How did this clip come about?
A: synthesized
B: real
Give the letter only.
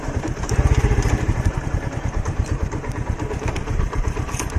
A